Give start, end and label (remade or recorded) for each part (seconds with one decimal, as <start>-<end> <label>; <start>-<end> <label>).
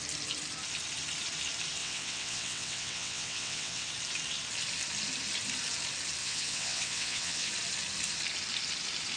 0.0-1.8 recorded; 1.8-3.9 remade; 3.9-6.2 recorded; 6.2-7.5 remade; 7.5-9.2 recorded